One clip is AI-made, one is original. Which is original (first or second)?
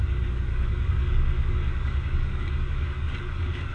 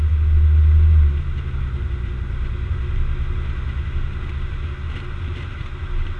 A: second